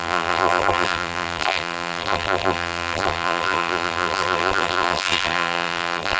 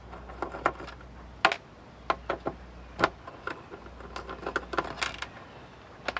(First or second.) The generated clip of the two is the first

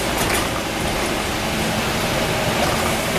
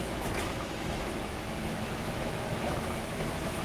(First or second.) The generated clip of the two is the second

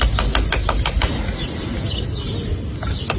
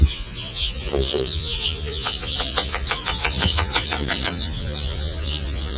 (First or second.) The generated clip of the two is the second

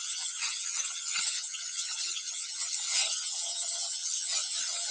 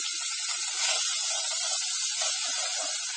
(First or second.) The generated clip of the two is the first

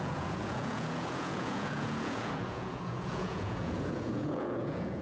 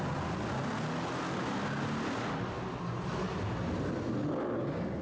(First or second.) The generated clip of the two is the first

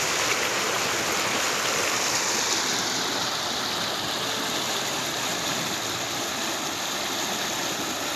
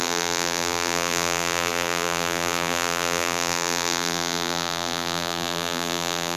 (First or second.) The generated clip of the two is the second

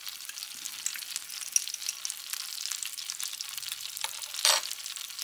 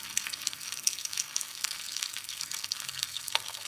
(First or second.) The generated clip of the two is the second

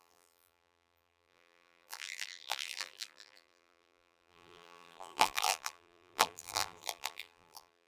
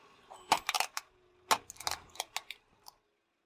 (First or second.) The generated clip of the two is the first